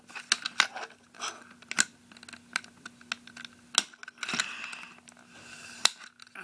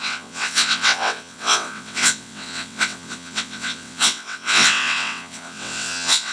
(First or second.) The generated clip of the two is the second